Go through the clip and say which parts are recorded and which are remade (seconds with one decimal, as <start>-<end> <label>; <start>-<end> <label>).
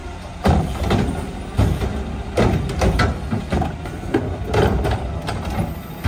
0.0-0.8 remade; 0.8-6.1 recorded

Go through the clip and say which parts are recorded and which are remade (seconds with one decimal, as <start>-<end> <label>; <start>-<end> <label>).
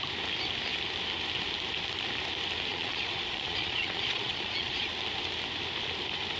0.0-2.7 recorded; 2.7-4.9 remade; 4.9-6.4 recorded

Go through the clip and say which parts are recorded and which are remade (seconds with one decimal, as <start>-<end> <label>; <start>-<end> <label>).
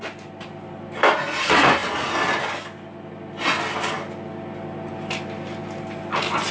0.0-6.5 recorded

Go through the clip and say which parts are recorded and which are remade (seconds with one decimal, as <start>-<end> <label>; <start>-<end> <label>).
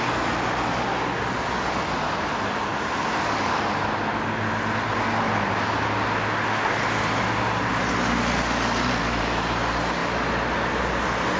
0.0-11.4 recorded